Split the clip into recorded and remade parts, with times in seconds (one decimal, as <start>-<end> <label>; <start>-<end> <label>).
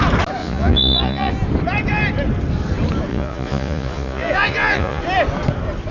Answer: 0.0-0.4 recorded; 0.4-1.3 remade; 1.3-3.1 recorded; 3.1-5.0 remade; 5.0-5.9 recorded